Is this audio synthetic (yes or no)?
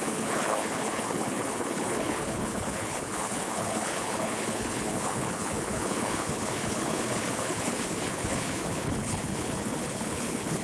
yes